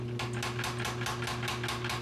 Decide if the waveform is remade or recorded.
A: recorded